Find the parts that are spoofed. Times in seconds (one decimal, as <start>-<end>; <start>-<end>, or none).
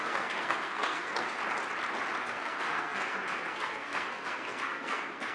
0.0-1.4; 2.2-5.3